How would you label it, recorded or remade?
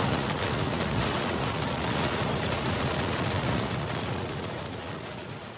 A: remade